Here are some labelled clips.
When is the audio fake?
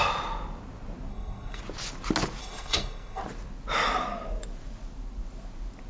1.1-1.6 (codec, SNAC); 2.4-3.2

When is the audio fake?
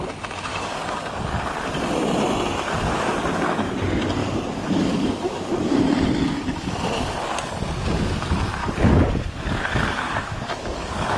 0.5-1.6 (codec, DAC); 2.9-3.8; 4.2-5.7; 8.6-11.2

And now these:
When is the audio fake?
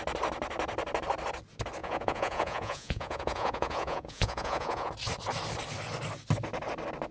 1.8-4.9 (vocoder, Vocos)